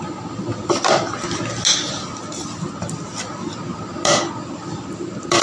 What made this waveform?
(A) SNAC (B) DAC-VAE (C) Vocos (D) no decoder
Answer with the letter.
D